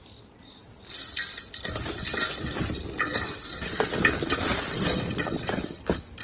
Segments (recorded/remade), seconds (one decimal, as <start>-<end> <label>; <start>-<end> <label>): 0.0-6.2 recorded